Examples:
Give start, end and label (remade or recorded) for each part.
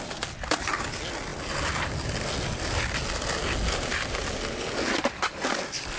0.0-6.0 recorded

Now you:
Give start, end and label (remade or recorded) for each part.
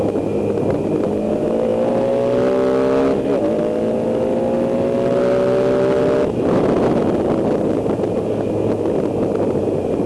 0.0-10.1 recorded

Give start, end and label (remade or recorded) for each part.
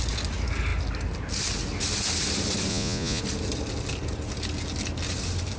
0.0-2.7 recorded; 2.7-3.2 remade; 3.2-5.6 recorded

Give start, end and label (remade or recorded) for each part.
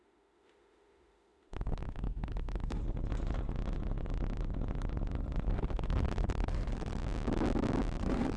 0.0-2.8 remade; 2.8-5.5 recorded; 5.5-7.0 remade; 7.0-8.0 recorded; 8.0-8.4 remade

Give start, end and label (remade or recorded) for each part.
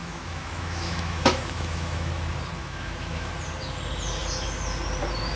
0.0-2.1 remade; 2.1-2.6 recorded; 2.6-3.3 remade; 3.3-5.4 recorded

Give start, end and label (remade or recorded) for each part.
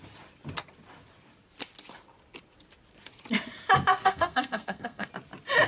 0.0-3.9 recorded; 3.9-5.1 remade; 5.1-5.7 recorded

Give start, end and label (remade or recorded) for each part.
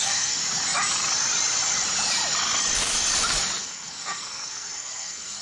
0.0-0.4 remade; 0.4-3.6 recorded; 3.6-5.4 remade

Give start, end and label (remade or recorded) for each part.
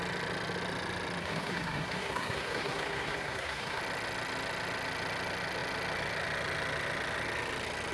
0.0-1.2 recorded; 1.2-3.8 remade; 3.8-7.9 recorded